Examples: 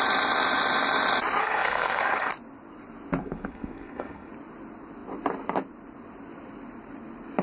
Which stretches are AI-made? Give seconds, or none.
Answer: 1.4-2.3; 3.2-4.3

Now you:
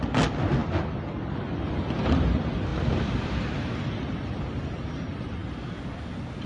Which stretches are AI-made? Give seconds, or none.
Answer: 2.7-4.4

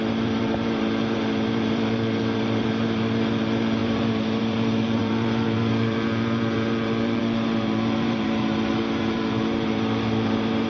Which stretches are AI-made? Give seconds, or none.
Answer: 0.0-10.7

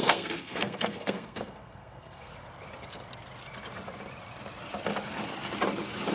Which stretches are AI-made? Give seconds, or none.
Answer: 0.0-2.3

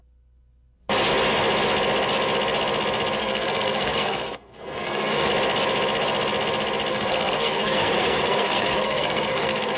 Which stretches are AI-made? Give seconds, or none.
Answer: 3.2-5.3; 6.9-9.8